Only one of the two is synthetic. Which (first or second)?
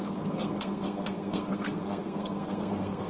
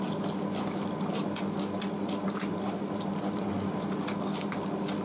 first